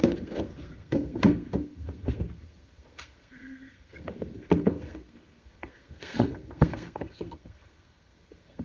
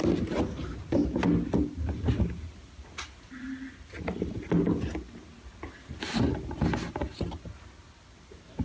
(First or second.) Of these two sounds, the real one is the second